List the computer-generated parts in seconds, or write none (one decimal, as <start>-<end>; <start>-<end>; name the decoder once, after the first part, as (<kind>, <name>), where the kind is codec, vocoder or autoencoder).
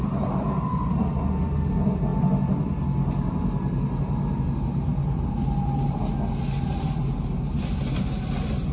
none